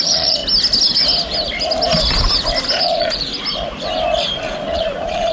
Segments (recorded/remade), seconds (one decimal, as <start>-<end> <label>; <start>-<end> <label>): 0.0-0.4 remade; 0.4-2.8 recorded; 2.8-3.3 remade; 3.3-4.4 recorded; 4.4-5.3 remade

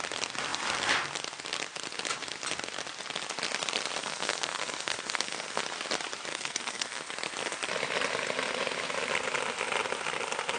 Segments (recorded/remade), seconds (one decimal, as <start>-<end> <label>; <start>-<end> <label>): 0.0-4.0 recorded; 4.0-5.6 remade; 5.6-6.3 recorded; 6.3-7.0 remade; 7.0-10.6 recorded

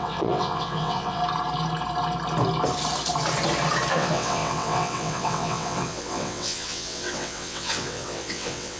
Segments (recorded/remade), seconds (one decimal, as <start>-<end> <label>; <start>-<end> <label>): 0.0-1.2 remade; 1.2-3.9 recorded; 3.9-8.8 remade

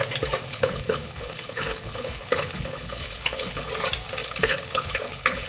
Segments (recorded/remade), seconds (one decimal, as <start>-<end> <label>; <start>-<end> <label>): 0.0-0.4 recorded; 0.4-3.7 remade; 3.7-4.2 recorded; 4.2-5.5 remade

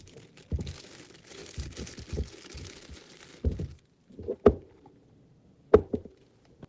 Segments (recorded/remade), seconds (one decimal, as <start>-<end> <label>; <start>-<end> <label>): 0.0-6.7 recorded